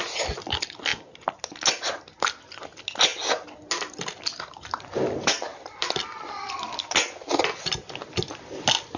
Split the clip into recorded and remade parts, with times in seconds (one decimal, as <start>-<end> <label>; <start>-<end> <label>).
0.0-5.5 recorded; 5.5-7.4 remade; 7.4-9.0 recorded